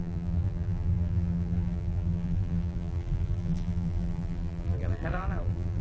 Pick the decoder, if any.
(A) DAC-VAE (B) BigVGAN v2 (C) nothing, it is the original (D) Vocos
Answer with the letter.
B